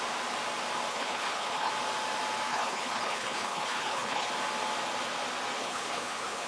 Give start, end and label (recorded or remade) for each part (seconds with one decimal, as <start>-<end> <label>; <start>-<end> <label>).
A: 0.0-0.9 recorded; 0.9-1.7 remade; 1.7-2.5 recorded; 2.5-4.3 remade; 4.3-5.6 recorded; 5.6-6.5 remade